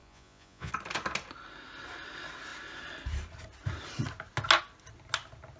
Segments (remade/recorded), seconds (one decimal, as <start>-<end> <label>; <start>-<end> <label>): 0.0-0.7 remade; 0.7-5.6 recorded